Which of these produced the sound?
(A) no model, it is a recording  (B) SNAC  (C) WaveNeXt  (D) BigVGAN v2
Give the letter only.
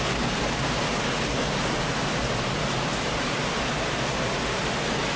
A